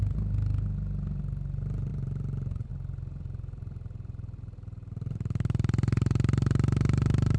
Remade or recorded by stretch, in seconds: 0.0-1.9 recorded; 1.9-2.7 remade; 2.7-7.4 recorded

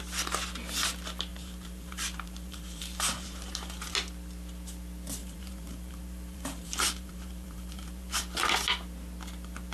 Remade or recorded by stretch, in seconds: 0.0-1.3 recorded; 1.3-3.9 remade; 3.9-5.2 recorded; 5.2-8.2 remade; 8.2-9.7 recorded